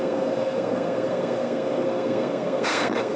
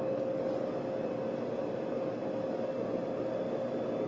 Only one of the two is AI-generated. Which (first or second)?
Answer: first